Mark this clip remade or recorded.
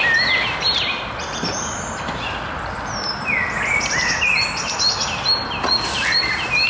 recorded